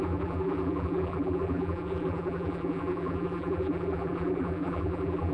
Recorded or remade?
remade